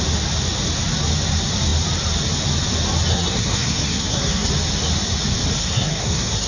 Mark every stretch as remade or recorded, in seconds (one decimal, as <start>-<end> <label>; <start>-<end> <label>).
0.0-3.1 recorded; 3.1-4.5 remade; 4.5-5.6 recorded; 5.6-6.5 remade